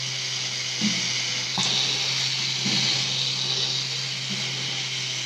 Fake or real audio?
real